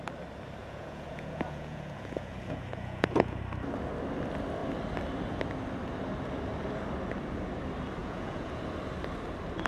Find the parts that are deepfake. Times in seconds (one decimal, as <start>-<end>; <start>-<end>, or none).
0.6-3.4; 8.0-8.6